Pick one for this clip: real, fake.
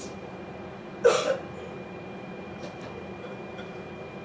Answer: real